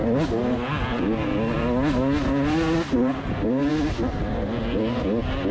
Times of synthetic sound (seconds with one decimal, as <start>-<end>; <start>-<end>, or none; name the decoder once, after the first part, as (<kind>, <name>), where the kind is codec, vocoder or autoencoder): none